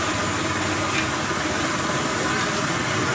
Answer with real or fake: real